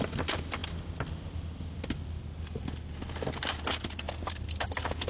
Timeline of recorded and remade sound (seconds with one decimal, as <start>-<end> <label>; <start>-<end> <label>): 0.0-5.1 recorded